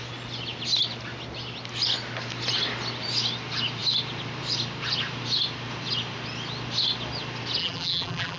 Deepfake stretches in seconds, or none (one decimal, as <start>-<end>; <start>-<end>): 7.6-8.4